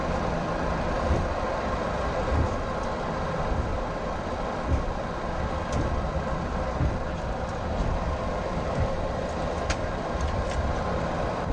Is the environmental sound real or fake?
fake